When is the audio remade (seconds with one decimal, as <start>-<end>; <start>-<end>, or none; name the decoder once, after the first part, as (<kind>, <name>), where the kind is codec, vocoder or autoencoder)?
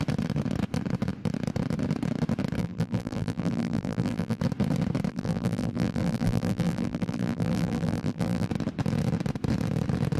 2.6-4.4 (vocoder, BigVGAN v2); 5.1-8.5